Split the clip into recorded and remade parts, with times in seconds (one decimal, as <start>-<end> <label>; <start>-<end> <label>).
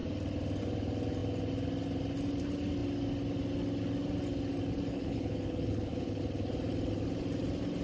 0.0-4.9 recorded; 4.9-6.2 remade; 6.2-7.8 recorded